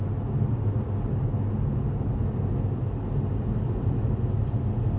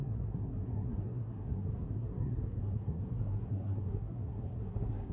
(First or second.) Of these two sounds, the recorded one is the first